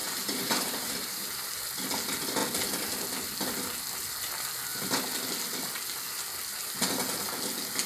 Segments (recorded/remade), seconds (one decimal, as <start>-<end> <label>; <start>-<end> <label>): 0.0-1.5 remade; 1.5-7.9 recorded